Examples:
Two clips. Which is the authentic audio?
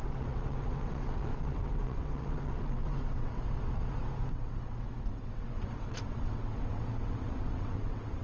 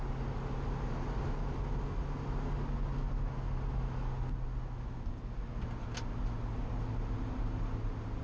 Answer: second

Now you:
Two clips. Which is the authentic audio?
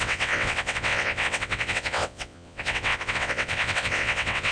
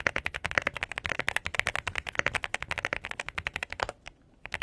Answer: second